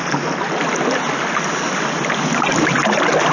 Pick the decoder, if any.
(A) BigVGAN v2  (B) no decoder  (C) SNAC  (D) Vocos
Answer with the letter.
B